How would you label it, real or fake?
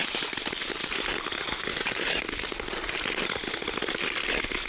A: real